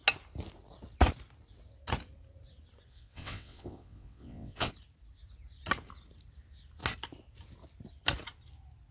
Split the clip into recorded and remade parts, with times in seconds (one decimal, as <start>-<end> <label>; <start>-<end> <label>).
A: 0.0-2.9 recorded; 2.9-4.7 remade; 4.7-8.9 recorded